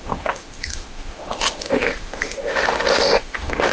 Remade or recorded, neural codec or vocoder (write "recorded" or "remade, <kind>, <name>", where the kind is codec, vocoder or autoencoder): remade, autoencoder, DAC-VAE